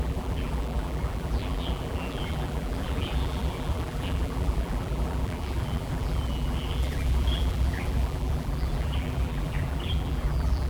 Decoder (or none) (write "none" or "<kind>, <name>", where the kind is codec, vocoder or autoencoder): vocoder, BigVGAN v2